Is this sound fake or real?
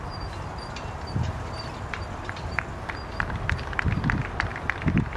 real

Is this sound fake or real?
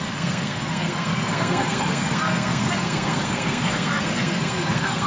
fake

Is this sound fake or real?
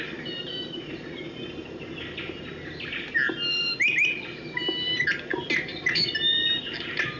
real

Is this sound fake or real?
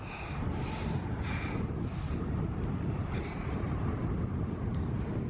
real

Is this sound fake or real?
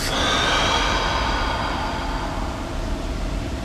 real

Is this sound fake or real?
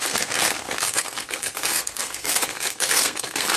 fake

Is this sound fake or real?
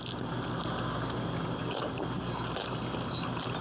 real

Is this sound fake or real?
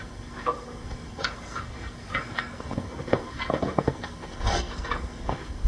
fake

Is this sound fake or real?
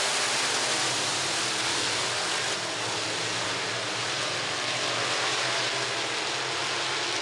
real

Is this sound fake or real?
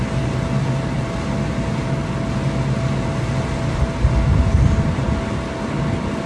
real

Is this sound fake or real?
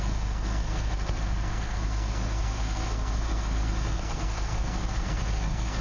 fake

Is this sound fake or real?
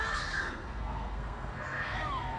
fake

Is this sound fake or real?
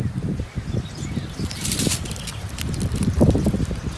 real